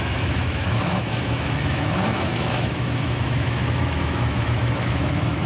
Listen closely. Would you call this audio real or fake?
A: fake